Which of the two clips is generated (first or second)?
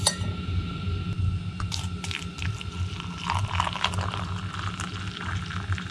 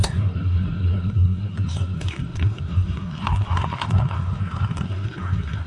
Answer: second